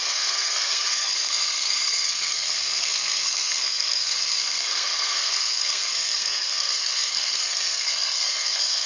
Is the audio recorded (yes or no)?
no